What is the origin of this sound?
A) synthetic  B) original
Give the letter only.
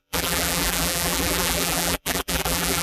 A